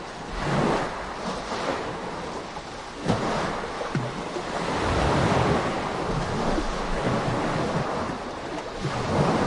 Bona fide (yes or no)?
yes